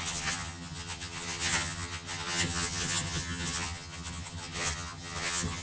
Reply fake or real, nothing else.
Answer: fake